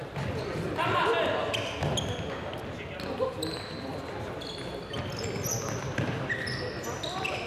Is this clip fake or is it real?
real